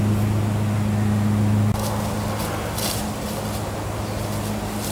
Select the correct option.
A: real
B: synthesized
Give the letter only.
A